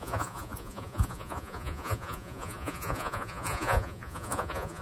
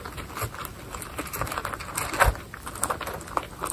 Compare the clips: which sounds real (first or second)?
second